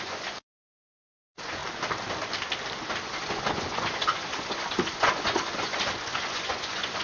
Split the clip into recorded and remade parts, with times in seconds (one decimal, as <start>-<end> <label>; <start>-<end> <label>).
0.0-1.6 remade; 1.6-3.0 recorded; 3.0-7.0 remade

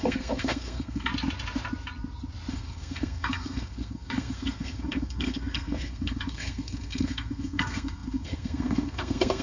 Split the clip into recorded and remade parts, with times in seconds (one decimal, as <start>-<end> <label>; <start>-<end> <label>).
0.0-1.1 remade; 1.1-2.5 recorded; 2.5-9.4 remade

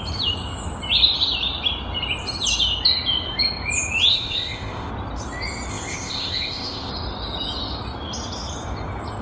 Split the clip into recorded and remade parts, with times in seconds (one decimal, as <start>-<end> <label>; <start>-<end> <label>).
0.0-4.1 recorded; 4.1-4.9 remade; 4.9-5.7 recorded; 5.7-6.9 remade; 6.9-9.2 recorded

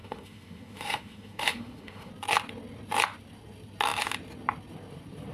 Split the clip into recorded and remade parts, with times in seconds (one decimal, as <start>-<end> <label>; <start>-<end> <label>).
0.0-2.1 remade; 2.1-5.3 recorded